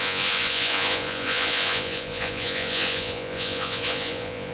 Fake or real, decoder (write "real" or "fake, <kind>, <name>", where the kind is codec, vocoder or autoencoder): fake, vocoder, Vocos